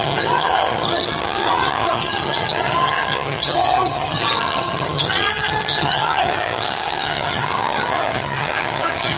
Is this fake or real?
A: fake